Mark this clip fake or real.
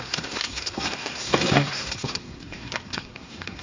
fake